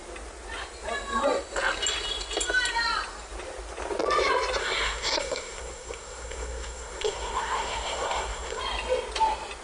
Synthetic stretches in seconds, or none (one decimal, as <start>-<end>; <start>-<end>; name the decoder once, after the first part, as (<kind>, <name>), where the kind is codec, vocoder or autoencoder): 4.6-8.6 (codec, SNAC)